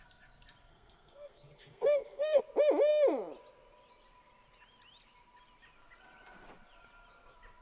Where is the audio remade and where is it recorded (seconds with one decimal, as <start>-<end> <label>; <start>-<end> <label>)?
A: 0.0-0.7 recorded; 0.7-2.4 remade; 2.4-7.6 recorded

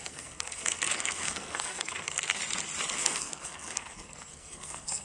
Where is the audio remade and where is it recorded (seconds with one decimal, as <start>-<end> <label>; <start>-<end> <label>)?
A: 0.0-2.4 remade; 2.4-2.9 recorded; 2.9-5.0 remade

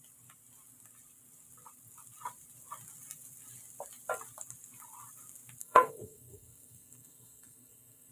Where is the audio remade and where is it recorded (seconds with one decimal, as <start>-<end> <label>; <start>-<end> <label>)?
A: 0.0-5.6 recorded; 5.6-8.1 remade

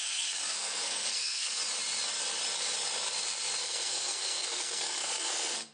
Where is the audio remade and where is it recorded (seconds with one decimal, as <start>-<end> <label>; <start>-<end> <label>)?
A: 0.0-1.6 remade; 1.6-3.6 recorded; 3.6-5.7 remade

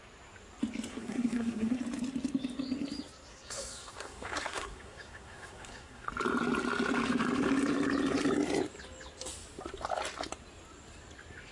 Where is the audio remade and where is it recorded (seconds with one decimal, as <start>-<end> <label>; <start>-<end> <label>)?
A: 0.0-0.9 recorded; 0.9-1.8 remade; 1.8-3.3 recorded; 3.3-6.1 remade; 6.1-11.5 recorded

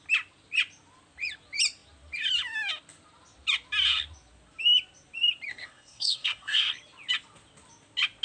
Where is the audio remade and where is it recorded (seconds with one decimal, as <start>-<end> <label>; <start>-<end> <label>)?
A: 0.0-5.5 recorded; 5.5-6.7 remade; 6.7-8.2 recorded

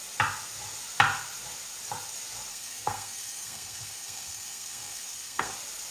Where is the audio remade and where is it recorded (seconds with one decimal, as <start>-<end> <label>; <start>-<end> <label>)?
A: 0.0-2.5 recorded; 2.5-5.5 remade; 5.5-5.9 recorded